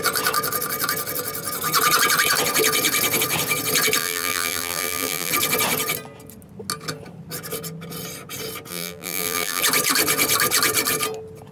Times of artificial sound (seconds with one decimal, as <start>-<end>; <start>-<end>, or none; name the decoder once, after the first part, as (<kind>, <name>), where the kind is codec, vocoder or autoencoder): 4.0-5.3 (vocoder, BigVGAN v2); 8.7-9.6